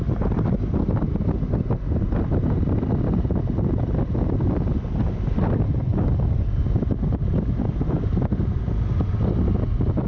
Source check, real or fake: real